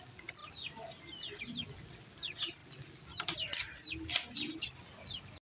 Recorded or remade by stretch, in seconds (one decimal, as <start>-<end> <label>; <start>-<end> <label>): 0.0-5.5 recorded